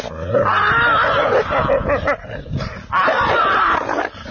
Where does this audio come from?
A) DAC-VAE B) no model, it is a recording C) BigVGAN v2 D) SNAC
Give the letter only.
B